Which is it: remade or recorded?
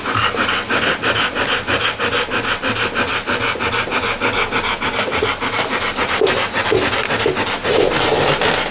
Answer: recorded